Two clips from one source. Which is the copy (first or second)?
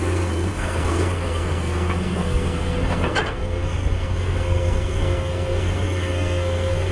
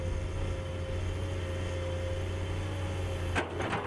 first